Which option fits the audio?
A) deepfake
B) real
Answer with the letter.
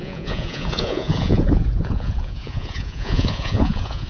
A